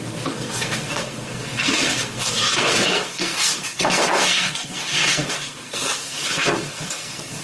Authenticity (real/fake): fake